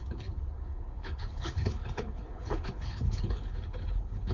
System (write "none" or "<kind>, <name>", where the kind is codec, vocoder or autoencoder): codec, HILCodec